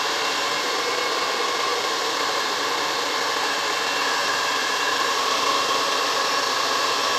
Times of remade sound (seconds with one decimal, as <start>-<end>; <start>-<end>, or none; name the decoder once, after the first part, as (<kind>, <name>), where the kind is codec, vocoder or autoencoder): 1.7-3.5 (vocoder, BigVGAN v2)

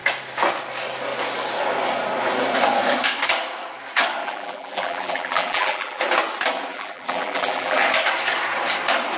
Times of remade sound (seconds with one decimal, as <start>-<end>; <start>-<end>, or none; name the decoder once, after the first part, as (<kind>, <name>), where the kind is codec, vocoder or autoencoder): 4.2-6.0 (vocoder, BigVGAN v2); 6.7-7.8

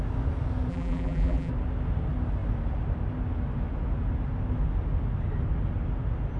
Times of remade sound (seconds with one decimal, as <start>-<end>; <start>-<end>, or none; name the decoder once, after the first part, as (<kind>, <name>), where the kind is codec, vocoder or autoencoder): 0.7-1.5 (vocoder, BigVGAN v2)